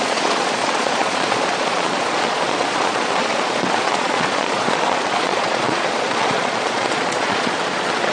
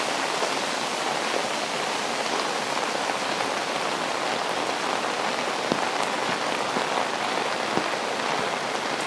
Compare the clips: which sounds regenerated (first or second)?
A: first